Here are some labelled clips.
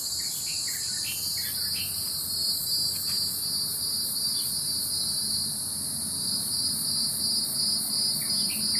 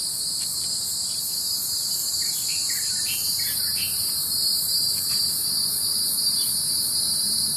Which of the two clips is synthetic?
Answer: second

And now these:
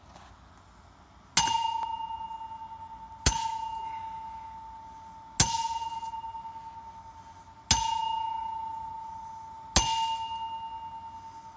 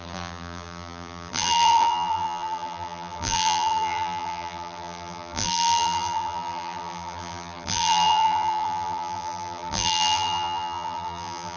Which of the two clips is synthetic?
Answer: second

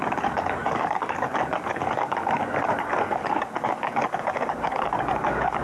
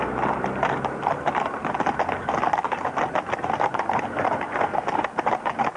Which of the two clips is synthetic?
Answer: first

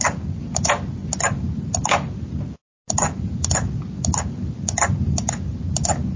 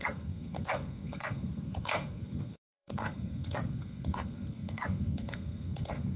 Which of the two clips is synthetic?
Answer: second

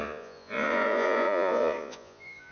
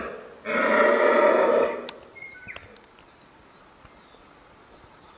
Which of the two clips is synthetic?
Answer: first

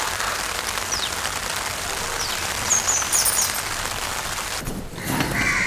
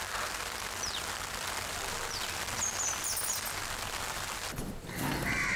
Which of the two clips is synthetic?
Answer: first